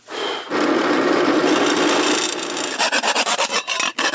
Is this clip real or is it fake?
real